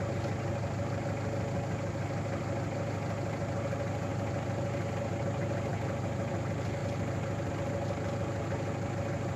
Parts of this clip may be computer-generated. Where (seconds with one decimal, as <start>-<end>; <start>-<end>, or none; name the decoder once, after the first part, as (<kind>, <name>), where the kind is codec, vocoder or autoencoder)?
none